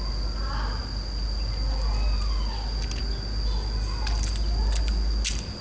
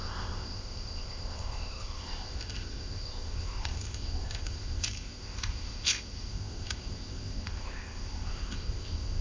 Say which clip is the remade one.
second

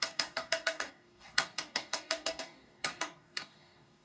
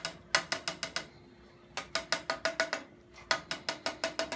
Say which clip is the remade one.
first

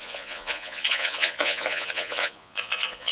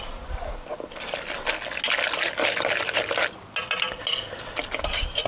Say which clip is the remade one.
first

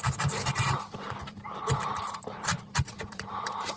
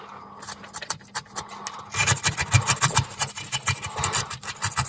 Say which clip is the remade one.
first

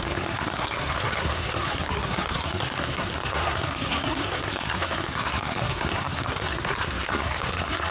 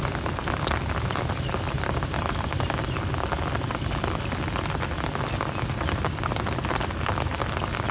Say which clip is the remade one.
first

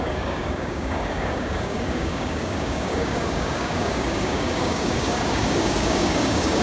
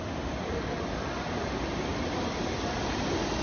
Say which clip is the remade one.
first